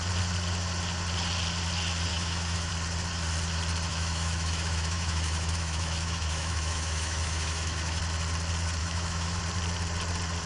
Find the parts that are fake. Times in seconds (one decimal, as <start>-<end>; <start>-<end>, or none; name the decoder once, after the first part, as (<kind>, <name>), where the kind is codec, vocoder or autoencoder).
2.1-2.7 (autoencoder, DAC-VAE); 3.9-8.0; 8.8-9.4

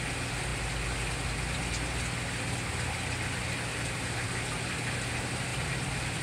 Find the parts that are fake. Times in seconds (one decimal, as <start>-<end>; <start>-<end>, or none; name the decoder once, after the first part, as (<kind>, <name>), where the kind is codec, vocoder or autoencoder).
3.7-4.3 (vocoder, BigVGAN v2); 5.5-6.2

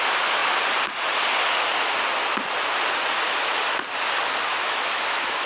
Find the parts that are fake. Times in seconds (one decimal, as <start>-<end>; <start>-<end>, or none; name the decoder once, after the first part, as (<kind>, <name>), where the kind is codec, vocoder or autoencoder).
4.5-5.5 (autoencoder, DAC-VAE)

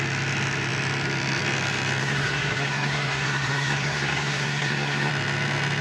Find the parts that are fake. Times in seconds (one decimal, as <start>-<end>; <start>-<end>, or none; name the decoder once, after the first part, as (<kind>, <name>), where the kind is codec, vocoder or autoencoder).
2.0-5.1 (codec, SNAC)

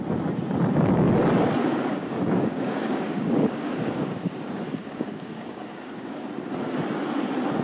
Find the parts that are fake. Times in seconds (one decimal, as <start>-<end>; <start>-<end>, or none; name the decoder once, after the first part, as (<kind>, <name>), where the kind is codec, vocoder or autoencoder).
1.6-6.2 (codec, DAC)

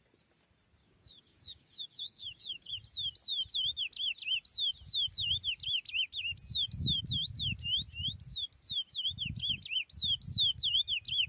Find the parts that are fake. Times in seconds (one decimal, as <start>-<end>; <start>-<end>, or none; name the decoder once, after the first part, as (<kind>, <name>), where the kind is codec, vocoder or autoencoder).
0.8-2.7 (codec, DAC)